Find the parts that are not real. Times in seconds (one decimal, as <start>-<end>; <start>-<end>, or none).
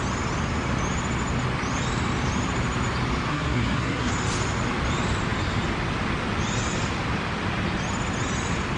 3.3-4.1